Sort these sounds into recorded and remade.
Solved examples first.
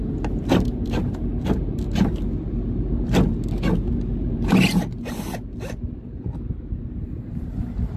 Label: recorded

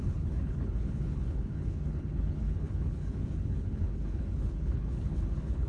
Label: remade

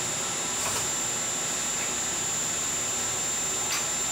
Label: recorded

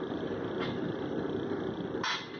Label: recorded